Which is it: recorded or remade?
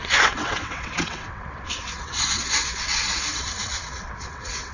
remade